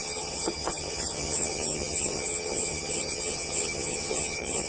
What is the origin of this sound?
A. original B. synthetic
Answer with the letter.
B